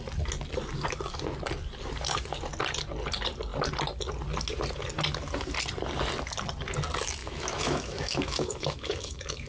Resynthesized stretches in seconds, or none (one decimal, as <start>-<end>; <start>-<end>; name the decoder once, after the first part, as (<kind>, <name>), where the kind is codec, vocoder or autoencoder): 7.2-9.5 (autoencoder, DAC-VAE)